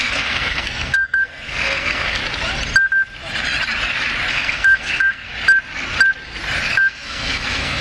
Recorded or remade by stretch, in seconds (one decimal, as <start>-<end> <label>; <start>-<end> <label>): 0.0-2.2 remade; 2.2-4.3 recorded; 4.3-5.3 remade; 5.3-6.7 recorded; 6.7-7.8 remade